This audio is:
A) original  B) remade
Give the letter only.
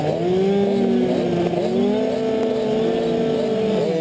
A